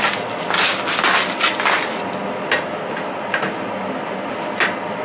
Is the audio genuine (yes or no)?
yes